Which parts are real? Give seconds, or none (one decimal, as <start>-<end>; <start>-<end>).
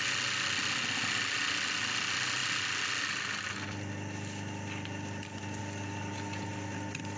0.0-7.2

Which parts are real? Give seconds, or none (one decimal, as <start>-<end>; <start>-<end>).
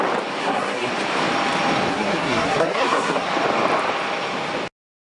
0.0-0.4; 0.9-1.9; 3.3-5.1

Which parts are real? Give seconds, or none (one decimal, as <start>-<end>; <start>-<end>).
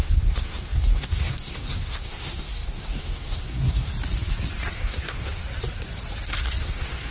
3.9-4.7; 5.4-6.6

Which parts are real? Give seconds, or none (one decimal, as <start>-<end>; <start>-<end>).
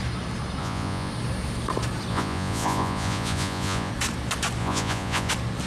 0.0-0.6; 1.1-2.1; 3.9-4.6; 5.3-5.7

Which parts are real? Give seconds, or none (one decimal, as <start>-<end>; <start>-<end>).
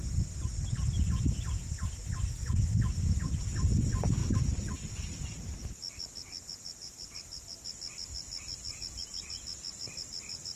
0.0-10.6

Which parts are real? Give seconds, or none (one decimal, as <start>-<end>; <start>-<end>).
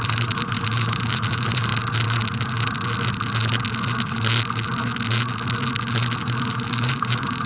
1.7-6.2